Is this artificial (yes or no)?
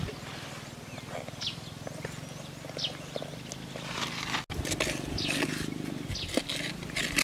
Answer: no